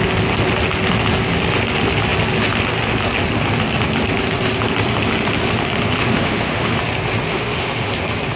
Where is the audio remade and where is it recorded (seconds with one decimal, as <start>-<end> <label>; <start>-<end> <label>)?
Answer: 0.0-6.0 recorded; 6.0-6.8 remade; 6.8-7.3 recorded; 7.3-7.9 remade; 7.9-8.4 recorded